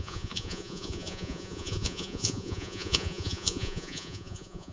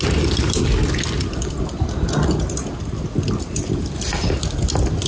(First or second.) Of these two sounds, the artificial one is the first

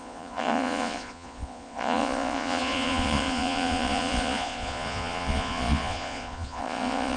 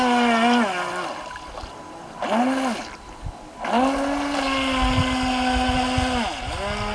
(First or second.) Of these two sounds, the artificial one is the first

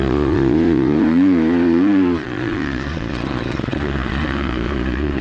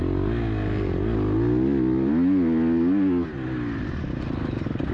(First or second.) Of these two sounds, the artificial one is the first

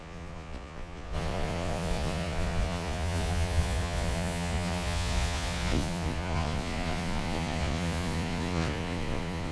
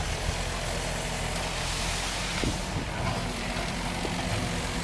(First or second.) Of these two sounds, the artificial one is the first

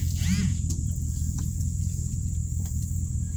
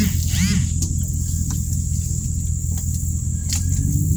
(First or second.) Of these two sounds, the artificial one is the first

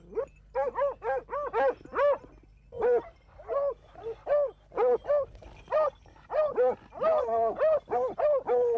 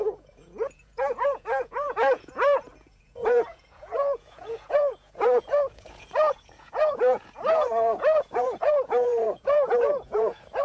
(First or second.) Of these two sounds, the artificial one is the second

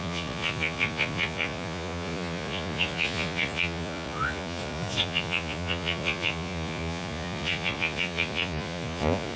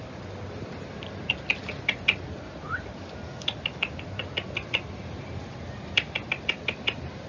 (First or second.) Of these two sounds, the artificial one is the first